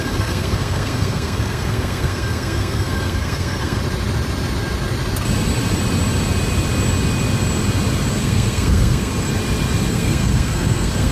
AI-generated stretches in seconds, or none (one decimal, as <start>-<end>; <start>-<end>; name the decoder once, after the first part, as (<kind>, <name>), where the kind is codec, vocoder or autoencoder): 0.0-3.8 (codec, SNAC); 8.1-9.1; 9.9-11.1